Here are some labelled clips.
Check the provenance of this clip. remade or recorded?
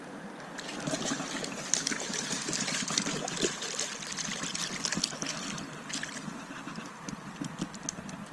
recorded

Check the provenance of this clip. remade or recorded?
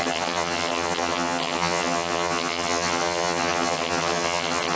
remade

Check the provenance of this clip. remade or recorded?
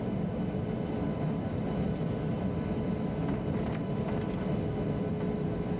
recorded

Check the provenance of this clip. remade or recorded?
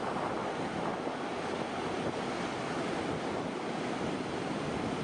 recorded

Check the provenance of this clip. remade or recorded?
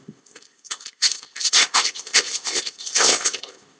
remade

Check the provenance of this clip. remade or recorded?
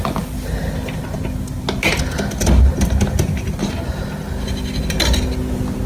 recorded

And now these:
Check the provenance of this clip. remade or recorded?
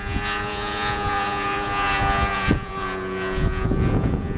remade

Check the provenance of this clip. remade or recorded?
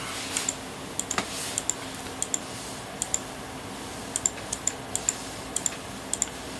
recorded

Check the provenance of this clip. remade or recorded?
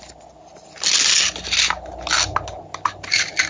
recorded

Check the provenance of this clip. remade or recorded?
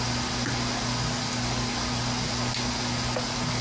recorded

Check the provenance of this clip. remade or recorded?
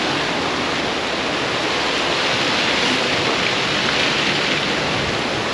recorded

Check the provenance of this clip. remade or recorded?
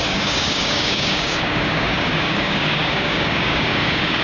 remade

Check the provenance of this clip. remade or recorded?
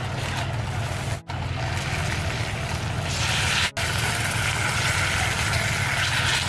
recorded